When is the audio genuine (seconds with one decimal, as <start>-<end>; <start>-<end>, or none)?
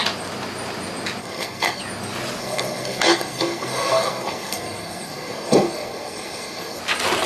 0.0-1.2; 1.8-2.4; 6.8-7.3